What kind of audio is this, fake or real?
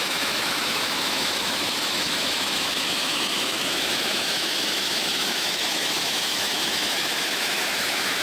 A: fake